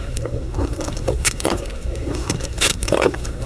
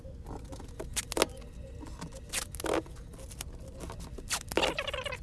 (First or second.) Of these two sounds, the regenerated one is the first